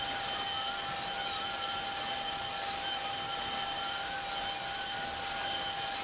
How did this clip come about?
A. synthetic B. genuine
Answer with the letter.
B